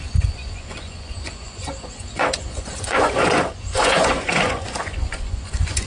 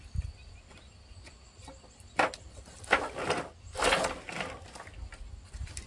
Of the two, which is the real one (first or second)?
second